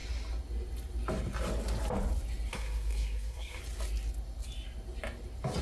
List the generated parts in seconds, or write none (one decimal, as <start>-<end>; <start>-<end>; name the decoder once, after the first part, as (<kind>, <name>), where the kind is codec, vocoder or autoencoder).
2.5-3.6 (codec, SNAC)